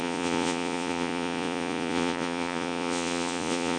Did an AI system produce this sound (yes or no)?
yes